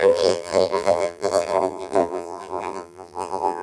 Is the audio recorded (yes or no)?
no